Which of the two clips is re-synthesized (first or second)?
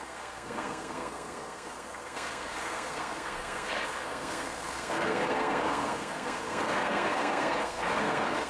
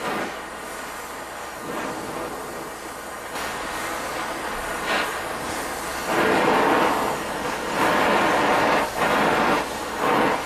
first